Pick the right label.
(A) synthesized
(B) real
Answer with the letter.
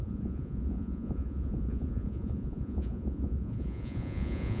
A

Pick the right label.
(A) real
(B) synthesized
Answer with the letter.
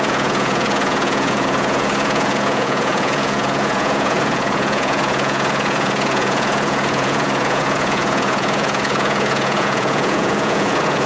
B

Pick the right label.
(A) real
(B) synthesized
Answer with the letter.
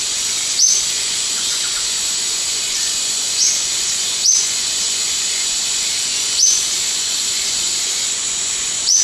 B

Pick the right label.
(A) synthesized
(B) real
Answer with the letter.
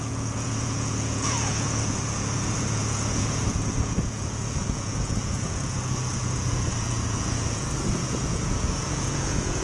A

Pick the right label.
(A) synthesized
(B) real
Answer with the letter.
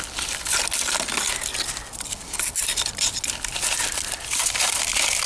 B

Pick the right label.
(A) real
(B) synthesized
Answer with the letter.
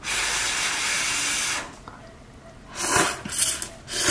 A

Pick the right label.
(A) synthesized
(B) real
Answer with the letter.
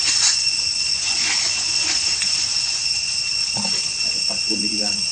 A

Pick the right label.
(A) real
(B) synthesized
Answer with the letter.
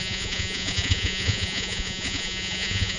B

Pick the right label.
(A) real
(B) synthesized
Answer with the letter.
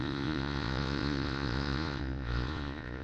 B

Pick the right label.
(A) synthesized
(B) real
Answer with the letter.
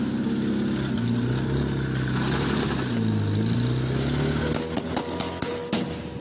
B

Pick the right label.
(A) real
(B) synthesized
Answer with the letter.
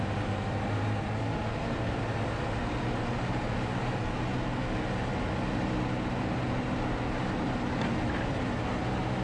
A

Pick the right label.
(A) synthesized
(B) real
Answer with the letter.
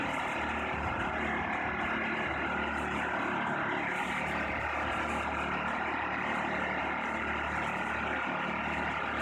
B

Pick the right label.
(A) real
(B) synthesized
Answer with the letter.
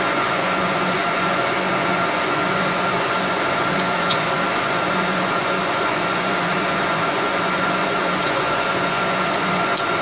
B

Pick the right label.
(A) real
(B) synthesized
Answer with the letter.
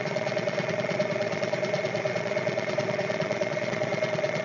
B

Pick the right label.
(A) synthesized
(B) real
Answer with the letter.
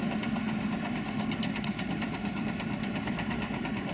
B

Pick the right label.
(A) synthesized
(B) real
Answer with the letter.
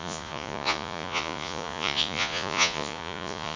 A